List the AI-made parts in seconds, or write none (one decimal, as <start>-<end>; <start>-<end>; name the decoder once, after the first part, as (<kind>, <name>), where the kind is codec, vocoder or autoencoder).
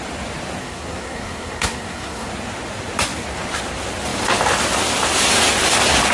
0.6-2.3 (codec, SNAC)